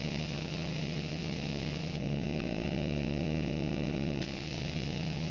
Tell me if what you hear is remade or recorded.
remade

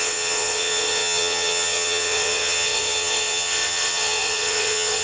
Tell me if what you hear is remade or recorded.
remade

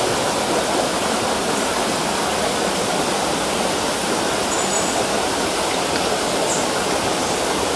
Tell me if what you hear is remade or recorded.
recorded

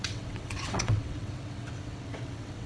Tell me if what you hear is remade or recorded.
remade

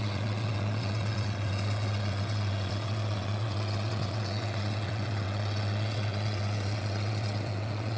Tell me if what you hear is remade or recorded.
remade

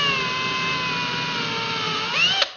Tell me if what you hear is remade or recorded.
recorded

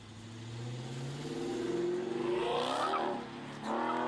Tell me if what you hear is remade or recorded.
recorded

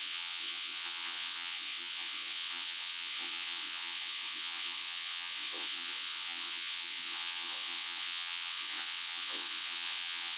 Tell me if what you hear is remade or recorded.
remade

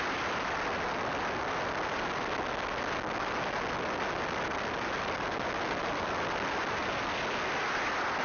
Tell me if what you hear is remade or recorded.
recorded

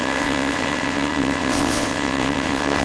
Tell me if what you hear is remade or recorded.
remade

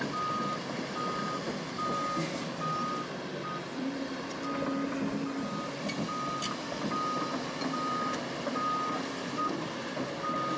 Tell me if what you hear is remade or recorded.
recorded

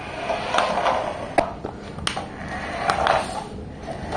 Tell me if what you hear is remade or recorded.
recorded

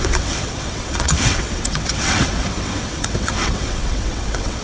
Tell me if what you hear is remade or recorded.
remade